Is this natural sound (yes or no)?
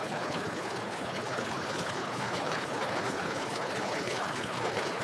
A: no